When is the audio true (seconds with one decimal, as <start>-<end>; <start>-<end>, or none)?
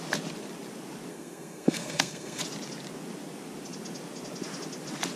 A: 0.0-1.1; 2.4-5.2